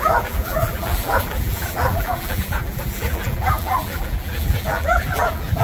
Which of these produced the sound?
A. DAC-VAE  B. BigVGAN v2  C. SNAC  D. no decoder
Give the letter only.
B